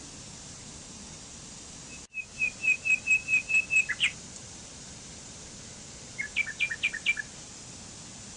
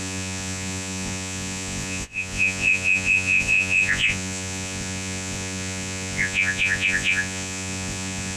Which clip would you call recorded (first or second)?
first